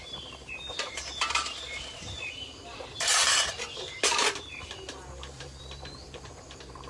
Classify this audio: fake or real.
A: fake